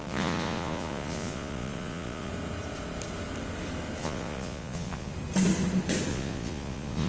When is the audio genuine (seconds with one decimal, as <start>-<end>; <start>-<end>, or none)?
2.3-4.0; 5.1-6.1